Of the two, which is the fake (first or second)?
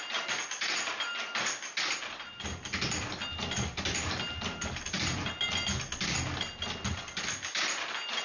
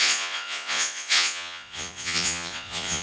second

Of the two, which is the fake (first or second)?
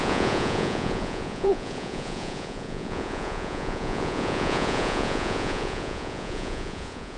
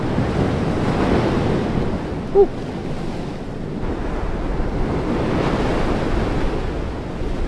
first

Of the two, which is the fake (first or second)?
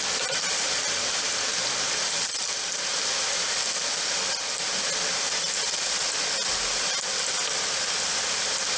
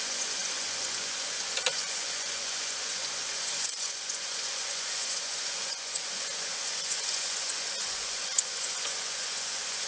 second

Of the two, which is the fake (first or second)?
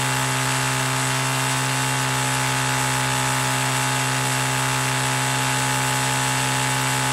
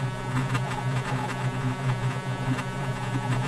second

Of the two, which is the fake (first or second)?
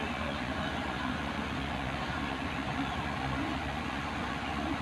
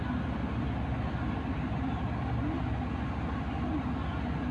first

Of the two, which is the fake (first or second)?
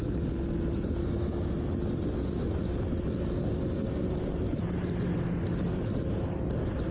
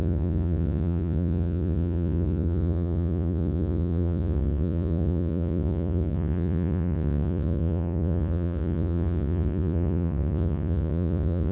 second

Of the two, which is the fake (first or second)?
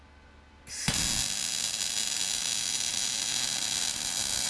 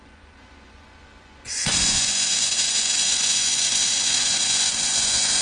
second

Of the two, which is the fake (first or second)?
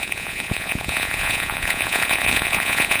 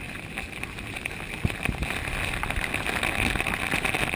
first